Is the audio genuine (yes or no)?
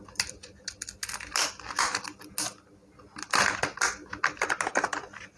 yes